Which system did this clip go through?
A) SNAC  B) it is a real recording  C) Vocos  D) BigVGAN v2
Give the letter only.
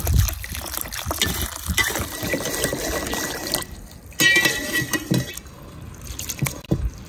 B